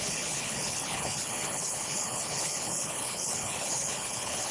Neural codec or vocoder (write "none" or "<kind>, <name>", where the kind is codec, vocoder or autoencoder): codec, HILCodec